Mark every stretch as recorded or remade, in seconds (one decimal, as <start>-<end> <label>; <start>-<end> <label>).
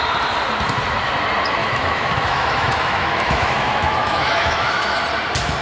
0.0-1.6 recorded; 1.6-5.0 remade; 5.0-5.6 recorded